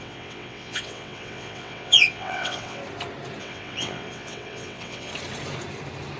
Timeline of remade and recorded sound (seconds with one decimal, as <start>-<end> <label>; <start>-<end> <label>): 0.0-2.8 remade; 2.8-3.4 recorded; 3.4-5.1 remade; 5.1-6.2 recorded